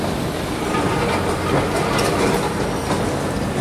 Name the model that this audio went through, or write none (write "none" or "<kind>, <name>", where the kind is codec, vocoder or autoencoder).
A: none